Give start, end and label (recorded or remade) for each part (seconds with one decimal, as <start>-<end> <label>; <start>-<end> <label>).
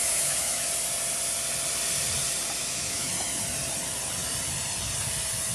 0.0-0.7 remade; 0.7-2.6 recorded; 2.6-3.1 remade; 3.1-5.5 recorded